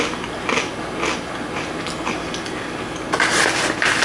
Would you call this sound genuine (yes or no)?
yes